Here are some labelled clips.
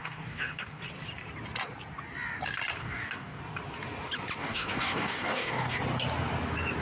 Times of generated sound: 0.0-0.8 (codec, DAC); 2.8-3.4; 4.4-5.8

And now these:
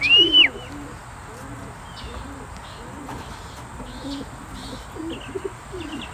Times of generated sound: none

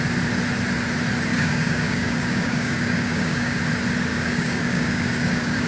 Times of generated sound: 1.3-3.6 (codec, DAC); 4.1-5.7

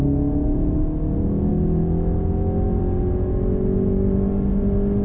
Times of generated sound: none

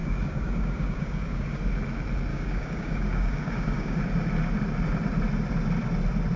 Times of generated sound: 0.0-1.6 (codec, DAC); 2.3-4.0

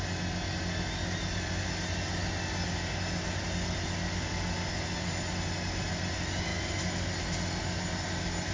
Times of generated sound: none